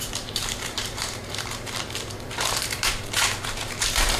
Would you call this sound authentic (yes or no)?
no